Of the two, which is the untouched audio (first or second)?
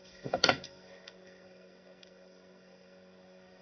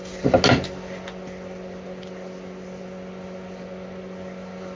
second